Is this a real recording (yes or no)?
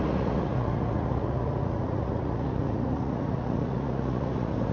no